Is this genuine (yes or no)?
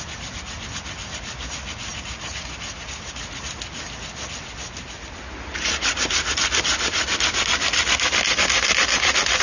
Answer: yes